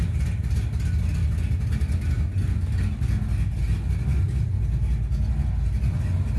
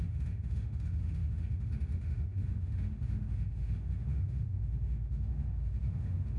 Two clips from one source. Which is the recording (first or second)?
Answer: first